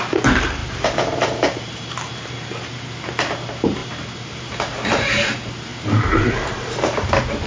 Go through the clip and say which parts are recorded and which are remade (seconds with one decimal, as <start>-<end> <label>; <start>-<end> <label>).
0.0-0.6 recorded; 0.6-2.1 remade; 2.1-3.8 recorded; 3.8-4.4 remade; 4.4-5.7 recorded; 5.7-7.1 remade; 7.1-7.5 recorded